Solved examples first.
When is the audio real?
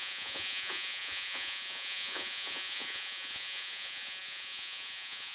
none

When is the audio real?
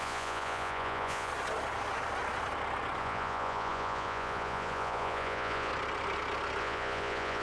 1.3-3.0; 5.7-6.6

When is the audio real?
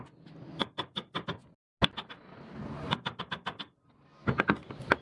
0.0-5.0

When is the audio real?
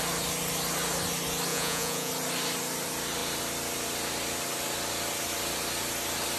0.0-1.5; 2.1-6.4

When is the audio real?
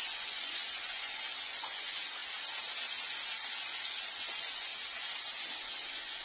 2.2-4.0; 4.7-5.6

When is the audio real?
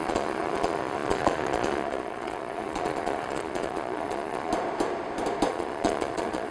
4.5-5.5